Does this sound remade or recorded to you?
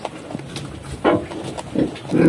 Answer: recorded